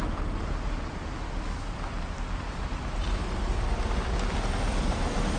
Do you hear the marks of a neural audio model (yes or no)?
no